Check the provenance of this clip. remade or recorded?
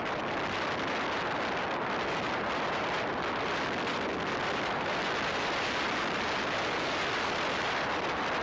recorded